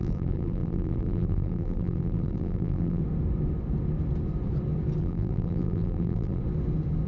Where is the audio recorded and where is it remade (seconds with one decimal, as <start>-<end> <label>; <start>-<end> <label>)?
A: 0.0-3.0 remade; 3.0-5.0 recorded; 5.0-6.4 remade; 6.4-7.1 recorded